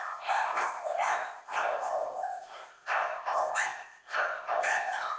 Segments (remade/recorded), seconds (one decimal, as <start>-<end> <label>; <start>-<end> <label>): 0.0-5.2 remade